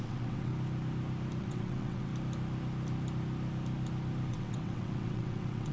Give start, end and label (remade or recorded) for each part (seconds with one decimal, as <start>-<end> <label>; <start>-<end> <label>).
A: 0.0-0.5 remade; 0.5-1.4 recorded; 1.4-2.1 remade; 2.1-4.3 recorded; 4.3-5.7 remade